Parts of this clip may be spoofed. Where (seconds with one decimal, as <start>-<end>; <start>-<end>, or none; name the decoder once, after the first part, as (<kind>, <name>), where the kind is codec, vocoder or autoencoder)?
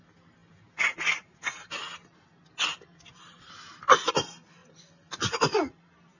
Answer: none